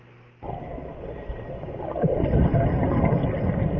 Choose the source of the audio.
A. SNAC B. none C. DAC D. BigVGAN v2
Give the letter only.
B